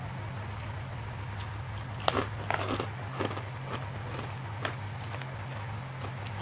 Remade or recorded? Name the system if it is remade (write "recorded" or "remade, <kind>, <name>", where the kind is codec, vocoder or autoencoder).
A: recorded